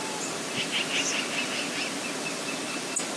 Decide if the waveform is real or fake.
real